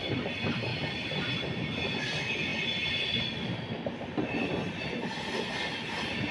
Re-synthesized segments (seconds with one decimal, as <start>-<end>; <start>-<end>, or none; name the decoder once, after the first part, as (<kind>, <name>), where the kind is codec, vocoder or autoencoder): none